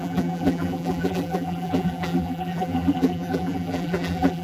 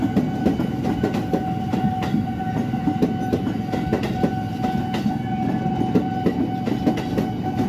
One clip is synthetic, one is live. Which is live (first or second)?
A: second